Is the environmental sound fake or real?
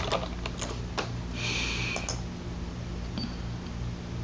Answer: real